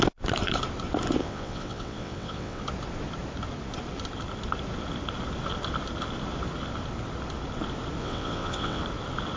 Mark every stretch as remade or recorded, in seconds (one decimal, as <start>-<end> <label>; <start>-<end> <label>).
0.0-1.2 recorded; 1.2-2.6 remade; 2.6-8.0 recorded; 8.0-8.8 remade; 8.8-9.4 recorded